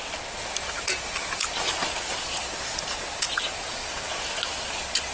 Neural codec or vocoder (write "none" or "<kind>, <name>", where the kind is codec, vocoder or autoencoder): none